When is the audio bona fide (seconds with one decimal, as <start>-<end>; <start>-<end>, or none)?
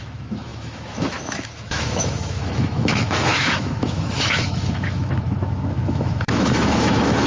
none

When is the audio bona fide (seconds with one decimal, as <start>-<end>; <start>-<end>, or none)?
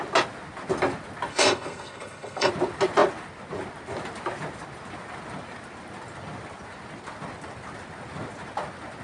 0.0-1.3; 2.5-9.0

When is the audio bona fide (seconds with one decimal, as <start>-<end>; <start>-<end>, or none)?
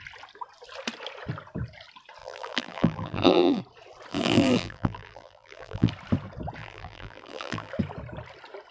0.0-2.2; 3.6-4.1; 5.9-6.6; 7.7-8.7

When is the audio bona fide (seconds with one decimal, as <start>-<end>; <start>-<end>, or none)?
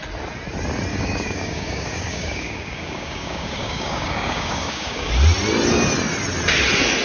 0.0-0.9; 5.1-7.0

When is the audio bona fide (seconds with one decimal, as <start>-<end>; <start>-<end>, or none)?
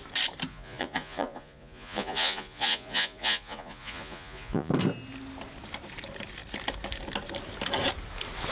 0.0-0.5; 4.7-8.5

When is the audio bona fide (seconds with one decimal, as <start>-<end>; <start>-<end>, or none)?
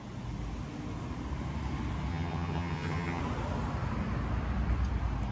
0.0-2.1; 3.2-5.3